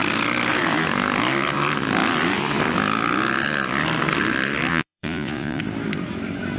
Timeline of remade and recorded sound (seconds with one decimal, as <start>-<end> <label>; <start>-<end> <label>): 0.0-4.7 recorded; 4.7-5.6 remade; 5.6-6.6 recorded